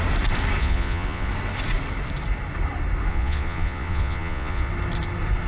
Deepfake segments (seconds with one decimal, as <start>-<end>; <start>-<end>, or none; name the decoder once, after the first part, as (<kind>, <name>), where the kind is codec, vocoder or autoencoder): 0.6-1.3 (vocoder, Vocos); 3.1-4.7